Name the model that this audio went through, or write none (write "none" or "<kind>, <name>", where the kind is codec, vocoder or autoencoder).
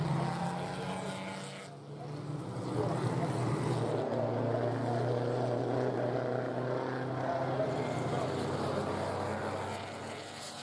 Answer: none